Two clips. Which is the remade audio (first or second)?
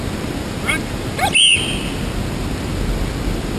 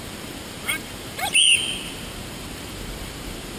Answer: second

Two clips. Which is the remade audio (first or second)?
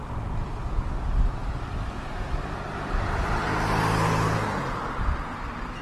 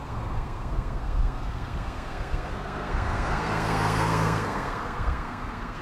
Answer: second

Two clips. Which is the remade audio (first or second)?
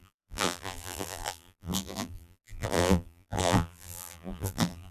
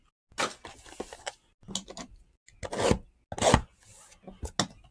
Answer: first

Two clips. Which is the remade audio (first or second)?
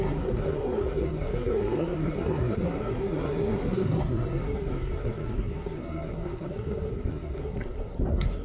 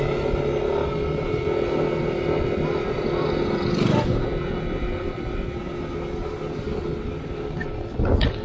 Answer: first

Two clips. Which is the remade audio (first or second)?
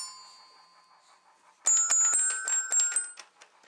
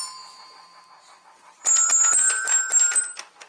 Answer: second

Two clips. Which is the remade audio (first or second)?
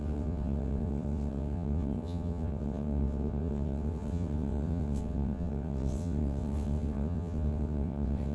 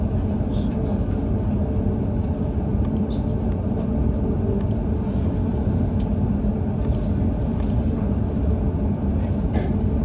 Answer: first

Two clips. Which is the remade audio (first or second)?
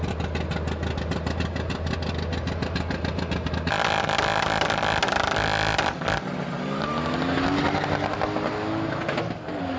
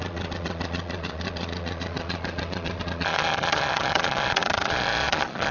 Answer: second